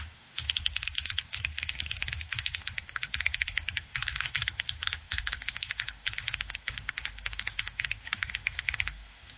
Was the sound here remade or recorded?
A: remade